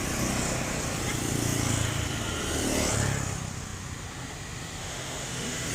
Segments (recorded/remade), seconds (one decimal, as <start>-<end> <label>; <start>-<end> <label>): 0.0-4.8 recorded; 4.8-5.7 remade